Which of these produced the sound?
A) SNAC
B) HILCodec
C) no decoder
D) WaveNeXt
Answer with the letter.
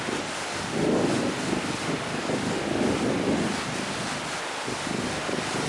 C